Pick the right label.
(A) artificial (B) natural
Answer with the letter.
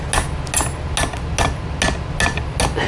B